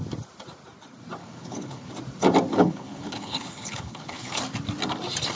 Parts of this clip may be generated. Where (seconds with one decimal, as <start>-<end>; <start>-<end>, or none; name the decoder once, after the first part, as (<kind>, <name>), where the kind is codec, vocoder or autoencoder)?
1.2-1.9 (codec, HILCodec); 2.5-4.4